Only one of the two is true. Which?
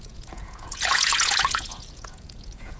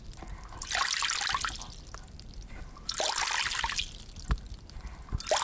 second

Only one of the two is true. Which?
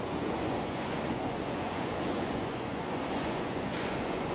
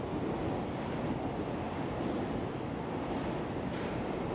second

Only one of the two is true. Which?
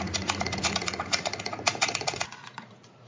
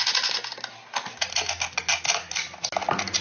second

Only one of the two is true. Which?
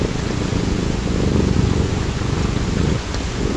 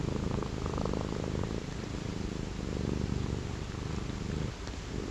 second